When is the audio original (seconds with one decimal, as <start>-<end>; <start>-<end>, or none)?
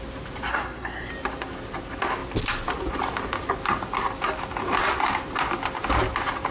0.0-0.5; 1.1-6.5